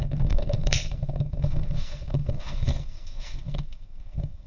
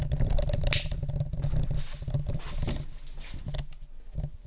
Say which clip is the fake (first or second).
first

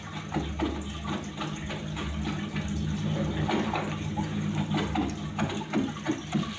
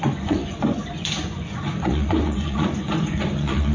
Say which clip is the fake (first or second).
second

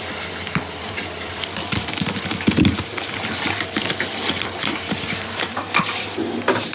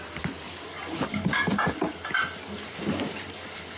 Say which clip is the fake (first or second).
first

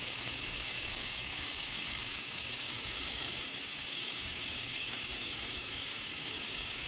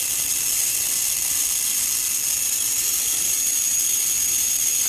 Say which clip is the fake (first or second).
first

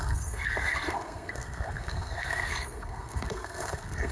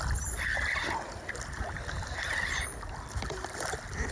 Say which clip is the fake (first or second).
first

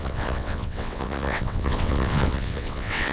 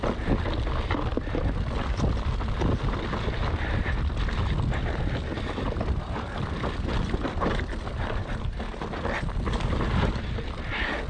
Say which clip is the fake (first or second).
first